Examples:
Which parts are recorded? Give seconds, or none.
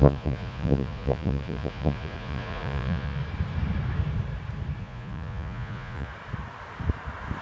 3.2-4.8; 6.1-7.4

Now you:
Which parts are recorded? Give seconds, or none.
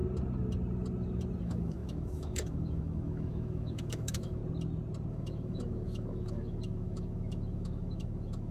0.0-1.4; 4.4-5.1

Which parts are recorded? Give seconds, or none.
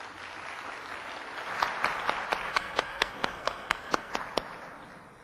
0.0-2.5; 4.1-5.2